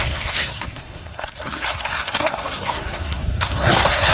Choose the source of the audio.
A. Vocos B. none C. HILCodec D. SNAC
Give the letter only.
D